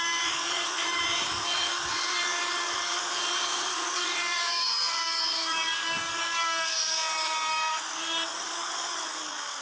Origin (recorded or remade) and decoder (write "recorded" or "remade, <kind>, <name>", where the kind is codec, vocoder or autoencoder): remade, codec, DAC